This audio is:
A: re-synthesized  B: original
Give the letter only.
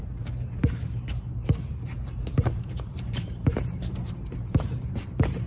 A